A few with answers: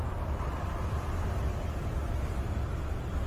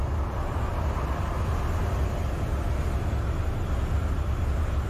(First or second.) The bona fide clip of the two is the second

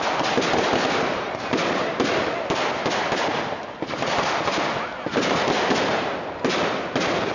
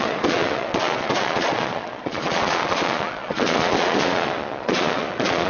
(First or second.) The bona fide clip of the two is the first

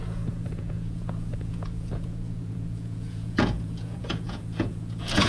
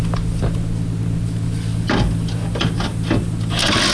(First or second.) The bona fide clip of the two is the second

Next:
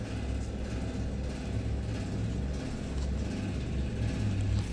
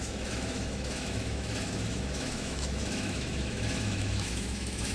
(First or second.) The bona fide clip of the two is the first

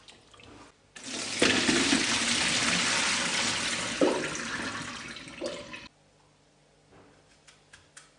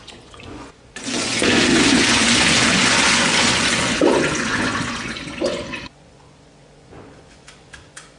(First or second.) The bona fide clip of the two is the first